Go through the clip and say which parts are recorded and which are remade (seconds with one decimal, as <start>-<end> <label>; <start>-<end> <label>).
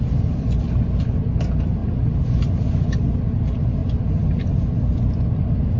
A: 0.0-5.8 recorded